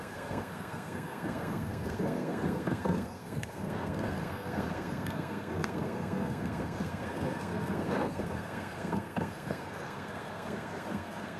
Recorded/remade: remade